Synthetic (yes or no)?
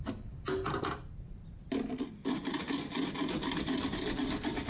no